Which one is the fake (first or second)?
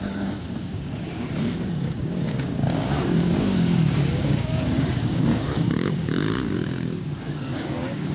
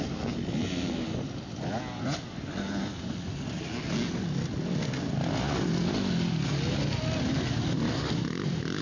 first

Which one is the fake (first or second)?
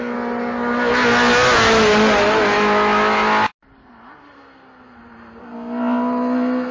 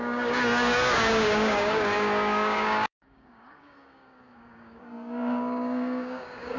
second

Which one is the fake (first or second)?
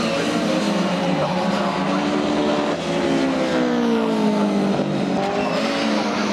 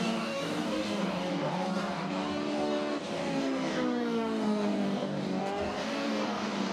second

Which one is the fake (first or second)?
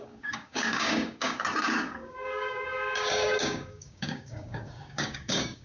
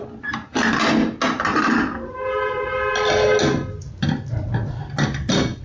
first